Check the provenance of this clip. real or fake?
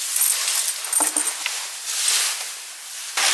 real